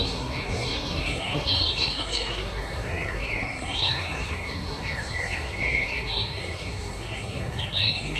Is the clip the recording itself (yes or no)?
no